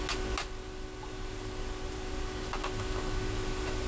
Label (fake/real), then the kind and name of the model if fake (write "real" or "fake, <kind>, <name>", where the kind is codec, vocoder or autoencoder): real